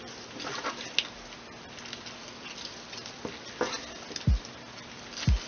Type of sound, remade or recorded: recorded